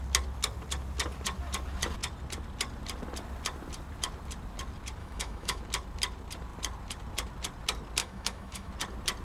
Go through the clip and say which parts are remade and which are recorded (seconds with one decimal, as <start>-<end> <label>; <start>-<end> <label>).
0.0-5.0 recorded; 5.0-5.6 remade; 5.6-8.0 recorded; 8.0-8.7 remade; 8.7-9.2 recorded